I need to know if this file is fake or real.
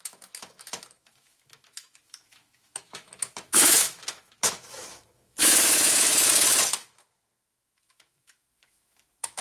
fake